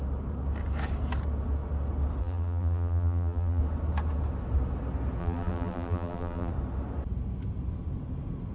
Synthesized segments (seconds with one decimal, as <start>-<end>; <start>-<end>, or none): 2.2-3.6; 5.2-6.5